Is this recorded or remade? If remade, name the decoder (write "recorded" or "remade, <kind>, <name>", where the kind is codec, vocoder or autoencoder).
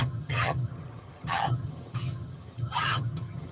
remade, vocoder, HiFi-GAN